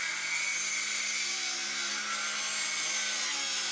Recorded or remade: recorded